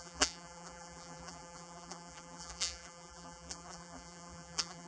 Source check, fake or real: fake